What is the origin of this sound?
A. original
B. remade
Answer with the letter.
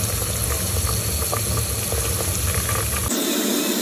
A